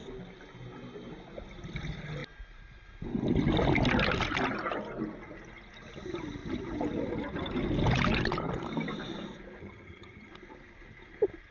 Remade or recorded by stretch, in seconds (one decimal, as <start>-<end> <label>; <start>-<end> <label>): 0.0-9.6 recorded; 9.6-10.3 remade; 10.3-11.5 recorded

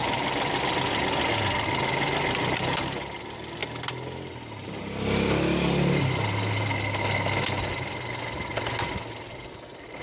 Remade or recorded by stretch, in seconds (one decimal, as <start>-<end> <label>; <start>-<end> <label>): 0.0-0.8 remade; 0.8-10.0 recorded

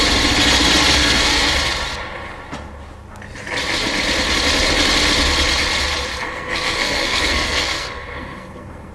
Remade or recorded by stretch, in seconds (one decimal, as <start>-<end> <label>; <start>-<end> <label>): 0.0-1.0 recorded; 1.0-1.5 remade; 1.5-6.1 recorded; 6.1-8.9 remade

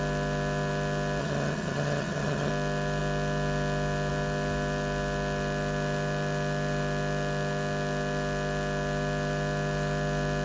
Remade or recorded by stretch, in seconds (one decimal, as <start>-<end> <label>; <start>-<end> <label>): 0.0-1.2 recorded; 1.2-2.5 remade; 2.5-10.4 recorded

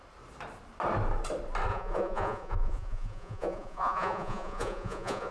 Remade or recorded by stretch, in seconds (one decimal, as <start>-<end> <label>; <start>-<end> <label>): 0.0-1.7 recorded; 1.7-5.3 remade